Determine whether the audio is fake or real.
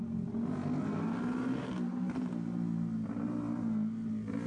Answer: real